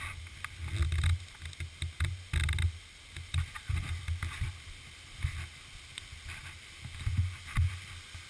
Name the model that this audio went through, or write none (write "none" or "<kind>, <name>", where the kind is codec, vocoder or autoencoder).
none